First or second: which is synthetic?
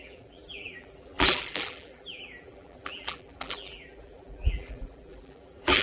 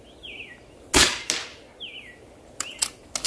first